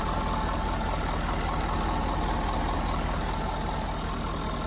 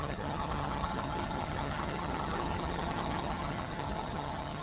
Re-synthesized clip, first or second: second